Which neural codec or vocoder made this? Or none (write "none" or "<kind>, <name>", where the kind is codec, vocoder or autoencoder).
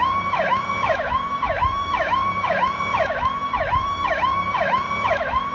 autoencoder, DAC-VAE